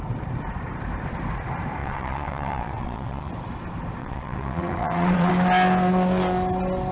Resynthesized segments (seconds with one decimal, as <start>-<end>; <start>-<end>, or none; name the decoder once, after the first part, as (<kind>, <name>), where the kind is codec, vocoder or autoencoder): 1.8-3.3 (vocoder, WaveNeXt); 4.0-5.3